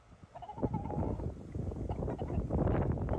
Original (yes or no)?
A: yes